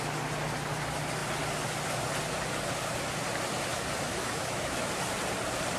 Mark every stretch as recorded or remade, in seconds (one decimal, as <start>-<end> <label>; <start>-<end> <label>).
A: 0.0-4.1 recorded; 4.1-4.9 remade; 4.9-5.8 recorded